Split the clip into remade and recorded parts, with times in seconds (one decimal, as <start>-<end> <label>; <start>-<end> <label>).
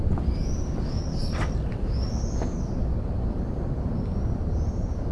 0.0-1.2 recorded; 1.2-1.9 remade; 1.9-2.8 recorded; 2.8-3.6 remade; 3.6-5.1 recorded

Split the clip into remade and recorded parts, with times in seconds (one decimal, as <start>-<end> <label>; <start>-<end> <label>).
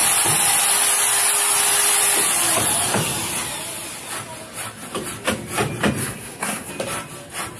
0.0-6.0 recorded; 6.0-6.7 remade; 6.7-7.6 recorded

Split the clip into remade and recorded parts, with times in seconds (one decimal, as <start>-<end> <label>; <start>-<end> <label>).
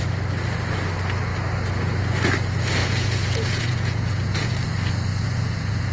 0.0-2.8 recorded; 2.8-4.6 remade; 4.6-5.1 recorded; 5.1-5.9 remade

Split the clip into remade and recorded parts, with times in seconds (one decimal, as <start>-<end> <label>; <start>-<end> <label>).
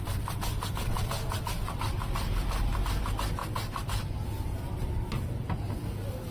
0.0-1.6 recorded; 1.6-3.0 remade; 3.0-6.3 recorded